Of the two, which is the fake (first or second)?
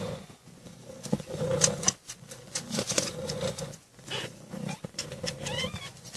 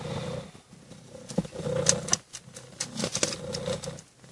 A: first